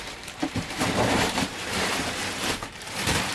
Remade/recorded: remade